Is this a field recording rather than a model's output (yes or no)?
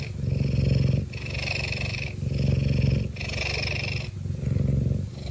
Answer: yes